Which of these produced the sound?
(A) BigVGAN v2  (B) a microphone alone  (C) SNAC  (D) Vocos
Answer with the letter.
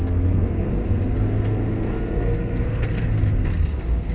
C